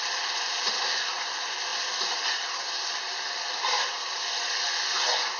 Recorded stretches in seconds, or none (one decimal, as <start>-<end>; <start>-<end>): 0.0-5.4